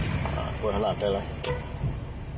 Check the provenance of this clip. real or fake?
real